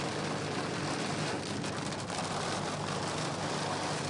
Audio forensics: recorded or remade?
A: recorded